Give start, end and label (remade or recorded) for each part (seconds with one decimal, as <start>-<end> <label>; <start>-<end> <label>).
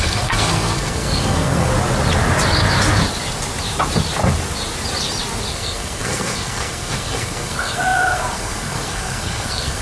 0.0-1.7 remade; 1.7-5.5 recorded; 5.5-9.8 remade